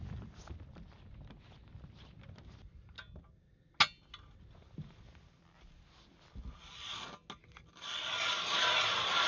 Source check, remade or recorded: recorded